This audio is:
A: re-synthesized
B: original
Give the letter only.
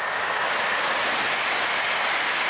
B